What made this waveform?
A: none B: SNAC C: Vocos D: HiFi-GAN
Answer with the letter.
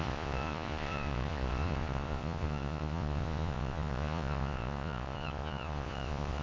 C